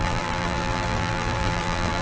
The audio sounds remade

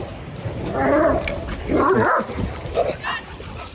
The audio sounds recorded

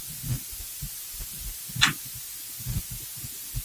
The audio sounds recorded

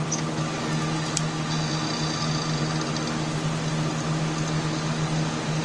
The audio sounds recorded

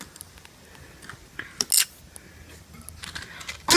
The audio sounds recorded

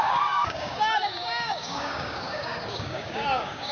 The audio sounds remade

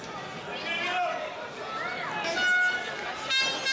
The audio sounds recorded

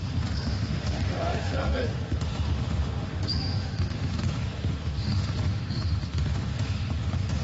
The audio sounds remade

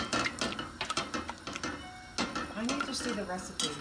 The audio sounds recorded